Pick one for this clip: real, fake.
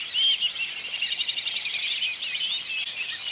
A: real